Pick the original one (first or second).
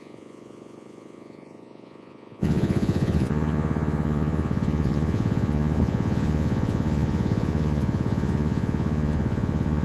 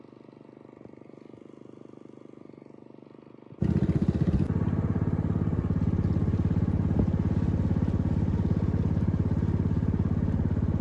second